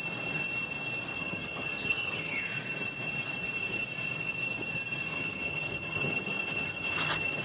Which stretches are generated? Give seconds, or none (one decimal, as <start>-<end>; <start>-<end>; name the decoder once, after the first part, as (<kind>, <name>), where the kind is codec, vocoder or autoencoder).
1.1-2.4 (vocoder, HiFi-GAN); 5.1-7.4